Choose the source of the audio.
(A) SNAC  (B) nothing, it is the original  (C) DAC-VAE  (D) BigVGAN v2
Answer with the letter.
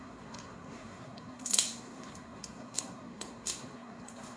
A